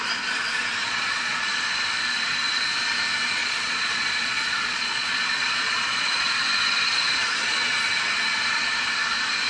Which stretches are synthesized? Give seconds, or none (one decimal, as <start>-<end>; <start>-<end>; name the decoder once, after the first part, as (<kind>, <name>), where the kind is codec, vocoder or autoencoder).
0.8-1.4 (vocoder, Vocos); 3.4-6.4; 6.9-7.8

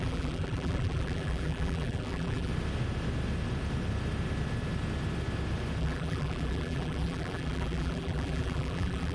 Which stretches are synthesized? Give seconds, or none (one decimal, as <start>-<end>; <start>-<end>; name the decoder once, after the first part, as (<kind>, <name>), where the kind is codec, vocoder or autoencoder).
0.0-2.5 (vocoder, BigVGAN v2); 5.8-9.1

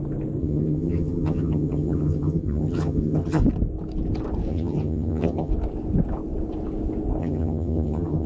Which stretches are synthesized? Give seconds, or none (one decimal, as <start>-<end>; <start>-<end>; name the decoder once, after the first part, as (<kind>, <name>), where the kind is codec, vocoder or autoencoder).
0.4-3.4 (vocoder, HiFi-GAN); 4.5-5.5; 7.2-8.3